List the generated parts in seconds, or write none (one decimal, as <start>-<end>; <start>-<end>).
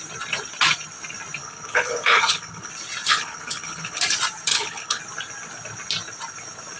1.4-2.7; 3.1-4.0; 4.5-5.0